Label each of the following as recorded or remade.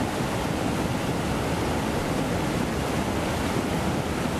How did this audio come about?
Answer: recorded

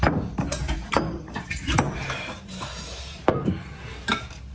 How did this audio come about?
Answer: remade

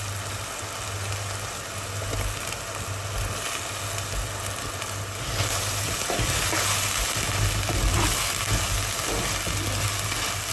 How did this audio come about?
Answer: recorded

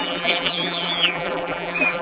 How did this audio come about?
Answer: remade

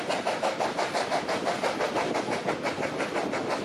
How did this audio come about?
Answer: recorded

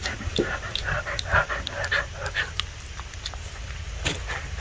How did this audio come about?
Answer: recorded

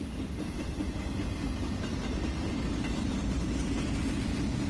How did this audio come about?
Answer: recorded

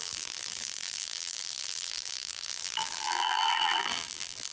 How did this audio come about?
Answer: remade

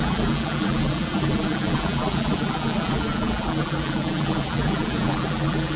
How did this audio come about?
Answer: remade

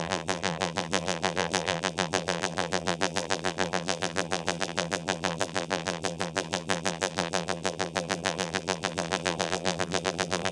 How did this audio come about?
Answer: remade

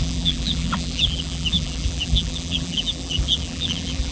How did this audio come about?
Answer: remade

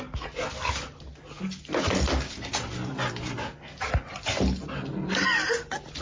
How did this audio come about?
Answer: recorded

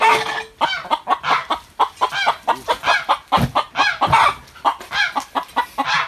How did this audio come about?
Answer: recorded